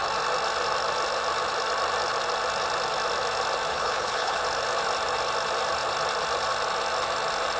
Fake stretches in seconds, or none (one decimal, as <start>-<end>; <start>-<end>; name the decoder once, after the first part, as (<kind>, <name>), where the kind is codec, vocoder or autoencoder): 3.7-4.4 (codec, HILCodec)

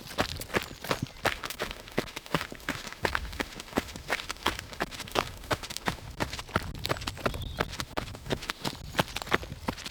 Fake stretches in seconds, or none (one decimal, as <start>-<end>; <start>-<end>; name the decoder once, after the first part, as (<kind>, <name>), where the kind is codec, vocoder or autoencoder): 1.3-6.4 (autoencoder, DAC-VAE); 7.7-8.7

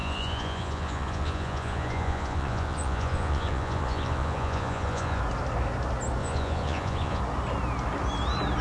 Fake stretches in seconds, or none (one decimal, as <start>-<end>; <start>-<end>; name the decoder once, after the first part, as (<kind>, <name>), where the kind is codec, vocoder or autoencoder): 0.0-5.2 (vocoder, Vocos); 6.2-7.2

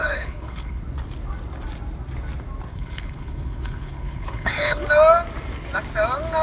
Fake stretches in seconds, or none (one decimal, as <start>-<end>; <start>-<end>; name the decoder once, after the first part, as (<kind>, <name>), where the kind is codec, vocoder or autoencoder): 0.0-0.8 (codec, HILCodec); 2.7-4.8

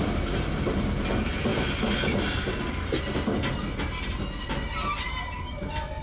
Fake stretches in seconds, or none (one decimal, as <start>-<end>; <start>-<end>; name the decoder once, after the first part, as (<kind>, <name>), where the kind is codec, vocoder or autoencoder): none